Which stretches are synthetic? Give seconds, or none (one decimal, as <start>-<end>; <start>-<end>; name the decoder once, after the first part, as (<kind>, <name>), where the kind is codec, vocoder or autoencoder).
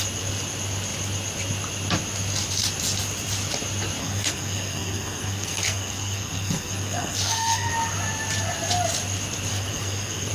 4.0-7.7 (codec, SNAC); 9.5-10.3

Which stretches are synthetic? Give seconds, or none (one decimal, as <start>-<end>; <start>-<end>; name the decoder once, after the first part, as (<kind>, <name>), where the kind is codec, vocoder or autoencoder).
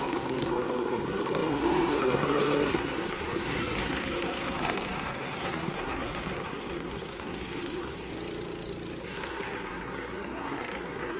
0.0-8.1 (codec, SNAC); 9.0-11.2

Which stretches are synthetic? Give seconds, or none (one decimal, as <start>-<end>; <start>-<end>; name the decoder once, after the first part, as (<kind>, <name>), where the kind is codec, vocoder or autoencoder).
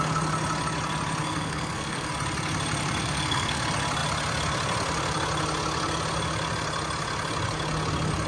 1.2-2.1 (codec, SNAC); 3.0-3.6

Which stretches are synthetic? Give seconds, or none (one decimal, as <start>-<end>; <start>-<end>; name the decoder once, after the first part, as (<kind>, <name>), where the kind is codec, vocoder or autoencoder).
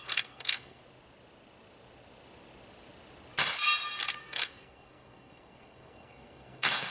0.0-0.8 (codec, SNAC); 4.2-6.9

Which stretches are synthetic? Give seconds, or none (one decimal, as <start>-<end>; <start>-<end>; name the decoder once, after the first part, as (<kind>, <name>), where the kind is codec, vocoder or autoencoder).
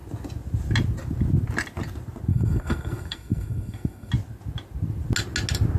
2.3-4.1 (codec, SNAC)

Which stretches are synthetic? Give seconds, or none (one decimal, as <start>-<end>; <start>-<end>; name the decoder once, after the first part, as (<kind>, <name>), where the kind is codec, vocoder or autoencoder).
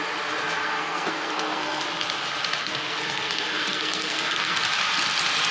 0.6-1.8 (codec, SNAC); 2.6-4.6